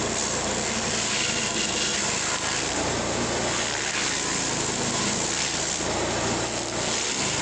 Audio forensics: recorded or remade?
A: recorded